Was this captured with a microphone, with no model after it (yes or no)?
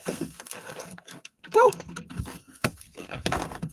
no